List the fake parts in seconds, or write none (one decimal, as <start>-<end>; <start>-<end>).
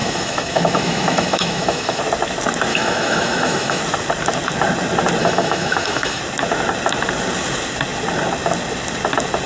0.0-2.0; 2.7-3.8; 5.2-6.2